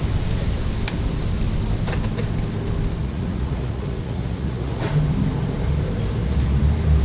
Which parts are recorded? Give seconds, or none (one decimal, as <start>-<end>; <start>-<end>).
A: 0.0-3.0; 4.8-7.0

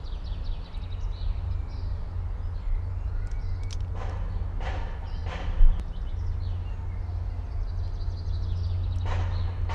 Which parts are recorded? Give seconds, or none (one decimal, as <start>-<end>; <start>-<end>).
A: 0.0-9.7

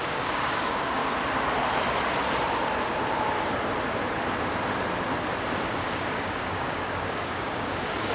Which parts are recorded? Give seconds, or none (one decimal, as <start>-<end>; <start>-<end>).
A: 1.0-5.9

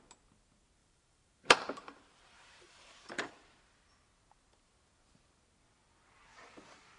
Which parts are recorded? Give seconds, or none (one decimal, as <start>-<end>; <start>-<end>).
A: 0.0-0.8; 3.3-7.0

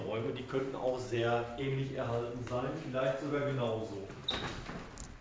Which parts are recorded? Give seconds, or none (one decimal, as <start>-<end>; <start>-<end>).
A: 0.0-5.2